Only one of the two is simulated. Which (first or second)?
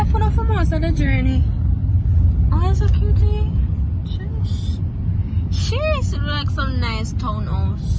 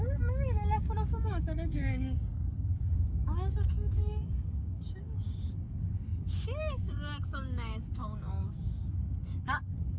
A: second